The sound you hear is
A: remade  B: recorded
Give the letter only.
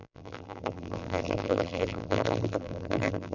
A